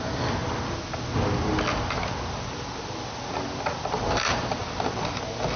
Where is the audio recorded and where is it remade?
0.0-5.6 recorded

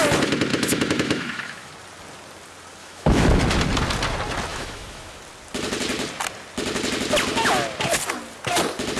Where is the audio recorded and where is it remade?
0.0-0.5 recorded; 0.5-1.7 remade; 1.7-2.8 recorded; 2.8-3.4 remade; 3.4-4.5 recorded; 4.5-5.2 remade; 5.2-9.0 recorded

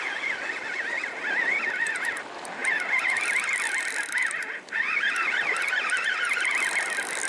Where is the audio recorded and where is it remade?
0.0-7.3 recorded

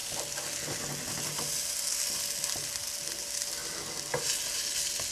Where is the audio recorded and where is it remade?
0.0-5.1 recorded

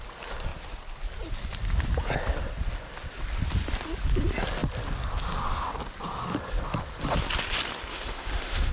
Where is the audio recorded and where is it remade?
0.0-7.9 recorded; 7.9-8.7 remade

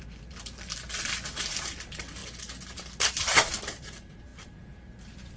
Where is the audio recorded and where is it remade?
0.0-2.2 remade; 2.2-3.1 recorded; 3.1-5.4 remade

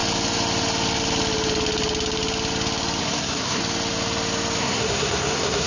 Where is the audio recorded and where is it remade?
0.0-3.0 recorded; 3.0-3.6 remade; 3.6-4.6 recorded; 4.6-5.7 remade